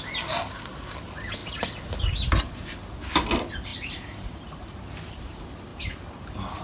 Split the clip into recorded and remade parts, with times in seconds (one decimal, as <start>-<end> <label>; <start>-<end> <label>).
0.0-3.7 recorded; 3.7-4.9 remade; 4.9-5.7 recorded; 5.7-6.6 remade